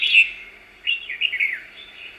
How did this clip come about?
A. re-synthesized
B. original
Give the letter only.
B